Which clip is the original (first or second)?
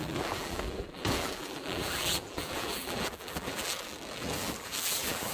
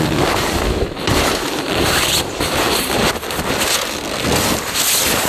second